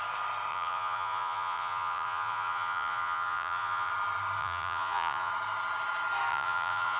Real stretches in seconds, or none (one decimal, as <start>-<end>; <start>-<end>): 0.0-0.5; 3.9-4.4; 5.3-6.3